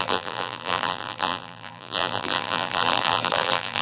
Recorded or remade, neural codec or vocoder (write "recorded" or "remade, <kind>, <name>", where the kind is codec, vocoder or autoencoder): remade, vocoder, BigVGAN v2